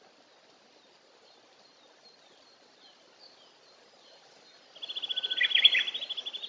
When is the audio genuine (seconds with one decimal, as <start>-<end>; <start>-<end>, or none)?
0.0-6.5